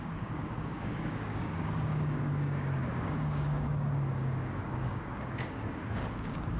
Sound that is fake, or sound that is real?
fake